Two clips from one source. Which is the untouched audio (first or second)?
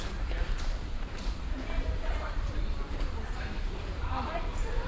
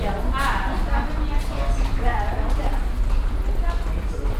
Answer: second